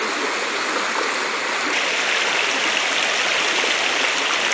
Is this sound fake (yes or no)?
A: no